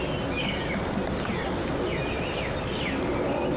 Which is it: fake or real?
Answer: real